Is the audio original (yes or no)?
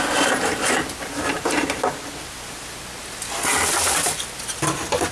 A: yes